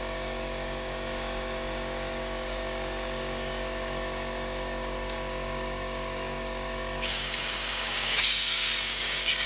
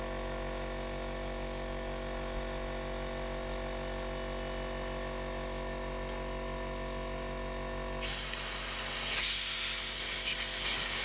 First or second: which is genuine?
second